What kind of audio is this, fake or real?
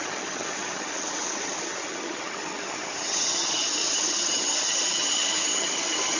fake